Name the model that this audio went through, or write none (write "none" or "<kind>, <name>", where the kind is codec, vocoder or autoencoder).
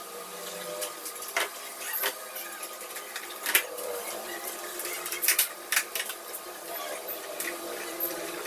vocoder, BigVGAN v2